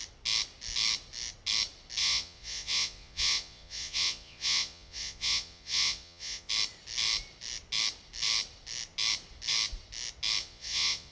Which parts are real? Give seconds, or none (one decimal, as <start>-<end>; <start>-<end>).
0.0-2.0; 6.5-10.4